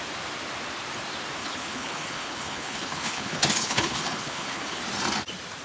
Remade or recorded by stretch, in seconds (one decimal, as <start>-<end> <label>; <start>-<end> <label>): 0.0-1.4 recorded; 1.4-4.8 remade; 4.8-5.6 recorded